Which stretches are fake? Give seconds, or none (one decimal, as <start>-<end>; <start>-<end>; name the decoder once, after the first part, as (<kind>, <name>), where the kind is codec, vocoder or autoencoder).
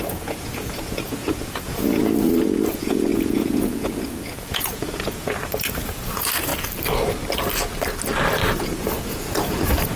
0.0-2.0 (vocoder, Vocos); 2.7-6.5; 8.6-10.0